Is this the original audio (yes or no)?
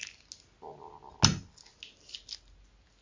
yes